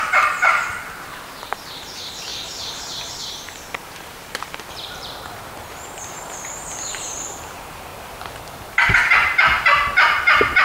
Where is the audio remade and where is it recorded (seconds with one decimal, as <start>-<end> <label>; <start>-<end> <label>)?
0.0-7.9 remade; 7.9-8.7 recorded; 8.7-10.6 remade